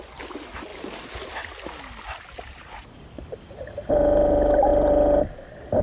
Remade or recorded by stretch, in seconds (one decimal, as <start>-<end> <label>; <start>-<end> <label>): 0.0-5.8 recorded